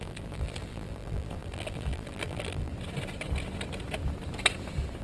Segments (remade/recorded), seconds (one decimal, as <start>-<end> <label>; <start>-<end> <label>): 0.0-2.7 remade; 2.7-5.0 recorded